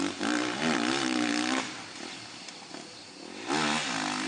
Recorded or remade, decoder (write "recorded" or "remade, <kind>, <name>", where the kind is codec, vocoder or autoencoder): recorded